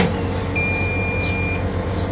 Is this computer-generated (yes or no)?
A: no